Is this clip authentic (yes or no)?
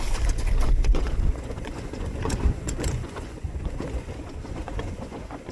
no